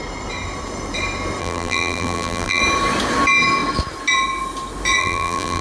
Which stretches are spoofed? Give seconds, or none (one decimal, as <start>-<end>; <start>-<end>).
1.4-2.6; 5.0-5.6

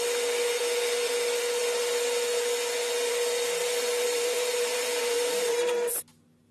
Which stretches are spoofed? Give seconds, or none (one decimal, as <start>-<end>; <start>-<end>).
3.6-5.9

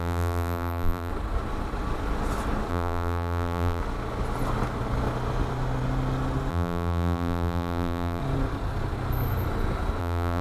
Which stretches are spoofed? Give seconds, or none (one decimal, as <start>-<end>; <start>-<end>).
0.0-1.1; 2.7-3.8; 6.5-8.2; 10.0-10.4

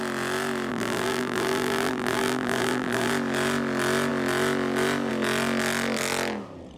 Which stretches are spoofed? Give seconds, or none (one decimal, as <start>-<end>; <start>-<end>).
0.7-3.1

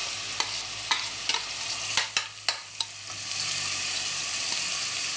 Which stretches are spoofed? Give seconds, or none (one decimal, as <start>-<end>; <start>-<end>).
3.1-5.2

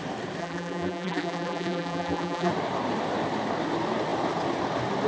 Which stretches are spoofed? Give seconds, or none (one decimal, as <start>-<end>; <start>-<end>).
0.4-2.5